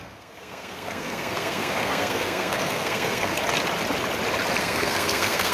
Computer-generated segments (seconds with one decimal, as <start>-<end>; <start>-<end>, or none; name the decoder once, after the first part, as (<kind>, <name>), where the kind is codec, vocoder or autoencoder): 0.0-3.4 (codec, SNAC); 4.6-5.5